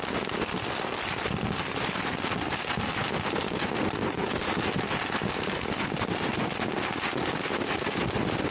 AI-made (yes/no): no